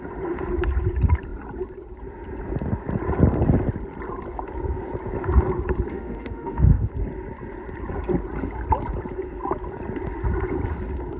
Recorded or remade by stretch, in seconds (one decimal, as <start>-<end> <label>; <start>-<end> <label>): 0.0-5.9 recorded; 5.9-6.9 remade; 6.9-11.2 recorded